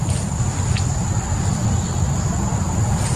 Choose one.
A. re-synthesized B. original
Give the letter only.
B